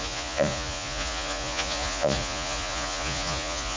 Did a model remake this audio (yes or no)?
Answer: yes